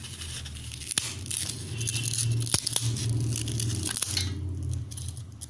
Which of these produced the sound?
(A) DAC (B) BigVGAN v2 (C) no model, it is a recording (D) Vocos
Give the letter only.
C